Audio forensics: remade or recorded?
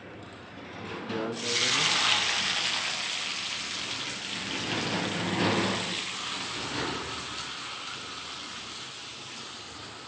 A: recorded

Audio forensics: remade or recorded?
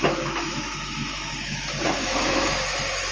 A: remade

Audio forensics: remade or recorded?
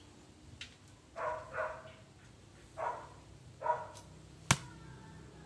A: recorded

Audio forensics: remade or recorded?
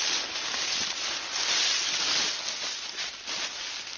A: recorded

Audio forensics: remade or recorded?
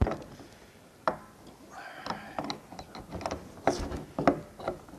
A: recorded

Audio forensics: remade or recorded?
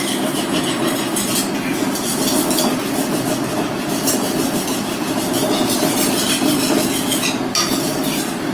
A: recorded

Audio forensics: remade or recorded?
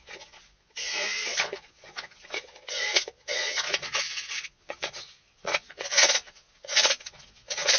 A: remade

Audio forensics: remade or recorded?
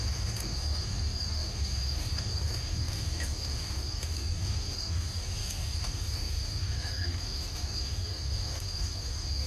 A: remade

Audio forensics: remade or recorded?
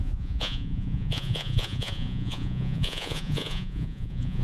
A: remade